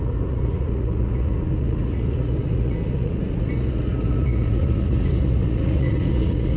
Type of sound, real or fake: fake